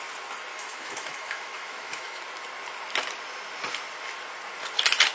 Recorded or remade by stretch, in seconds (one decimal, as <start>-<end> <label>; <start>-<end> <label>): 0.0-0.5 recorded; 0.5-2.2 remade; 2.2-5.1 recorded